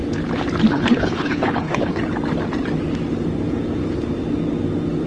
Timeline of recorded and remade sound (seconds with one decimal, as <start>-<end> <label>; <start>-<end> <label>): 0.0-0.7 recorded; 0.7-2.0 remade; 2.0-5.1 recorded